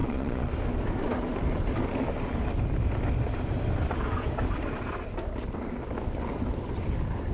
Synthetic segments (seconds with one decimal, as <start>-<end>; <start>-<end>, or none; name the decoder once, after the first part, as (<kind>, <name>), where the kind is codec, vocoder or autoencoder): 0.0-0.5 (vocoder, Vocos)